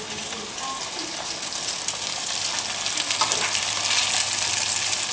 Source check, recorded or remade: recorded